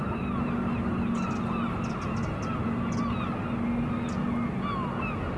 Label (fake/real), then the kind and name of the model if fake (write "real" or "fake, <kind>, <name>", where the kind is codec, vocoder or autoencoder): real